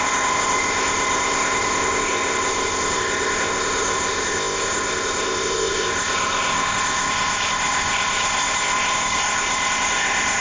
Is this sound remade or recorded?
remade